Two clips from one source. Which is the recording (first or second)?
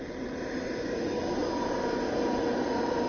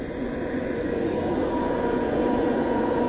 first